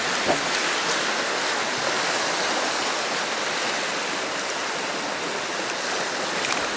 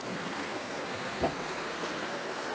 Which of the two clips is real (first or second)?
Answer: first